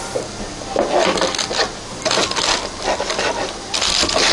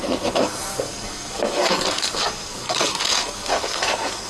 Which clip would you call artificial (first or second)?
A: second